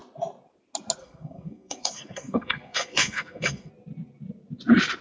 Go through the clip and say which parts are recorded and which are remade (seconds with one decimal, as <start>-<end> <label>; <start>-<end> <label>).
0.0-1.0 recorded; 1.0-3.7 remade; 3.7-5.0 recorded